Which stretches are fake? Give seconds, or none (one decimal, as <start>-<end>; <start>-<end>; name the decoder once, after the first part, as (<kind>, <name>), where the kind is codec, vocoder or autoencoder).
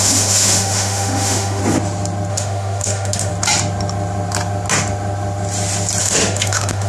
0.0-1.6 (autoencoder, DAC-VAE); 2.3-3.3; 6.0-6.9